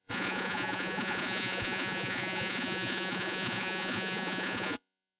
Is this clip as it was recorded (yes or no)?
no